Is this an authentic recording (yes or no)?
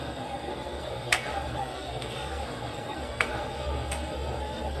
no